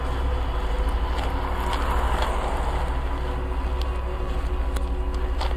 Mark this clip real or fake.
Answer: real